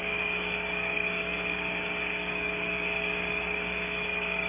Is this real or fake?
fake